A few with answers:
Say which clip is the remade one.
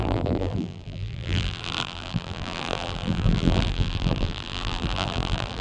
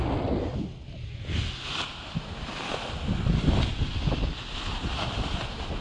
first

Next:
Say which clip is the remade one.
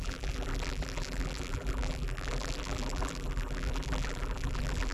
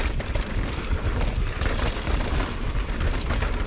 first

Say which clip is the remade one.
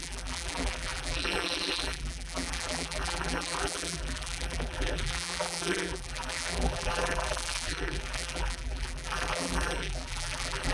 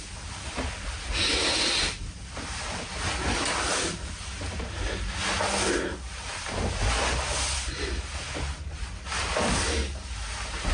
first